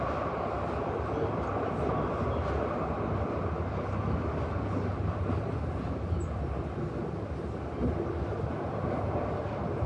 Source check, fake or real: real